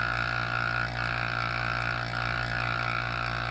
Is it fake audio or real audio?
real